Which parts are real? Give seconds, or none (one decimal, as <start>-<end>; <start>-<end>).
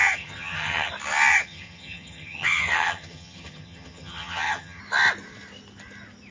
0.9-1.3; 4.8-6.3